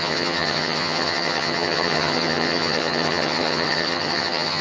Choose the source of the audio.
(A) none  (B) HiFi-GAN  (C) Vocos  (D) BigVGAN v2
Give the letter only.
B